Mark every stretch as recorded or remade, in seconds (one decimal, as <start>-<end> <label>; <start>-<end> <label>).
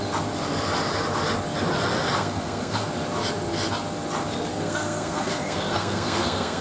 0.0-2.2 recorded; 2.2-2.9 remade; 2.9-4.5 recorded; 4.5-6.6 remade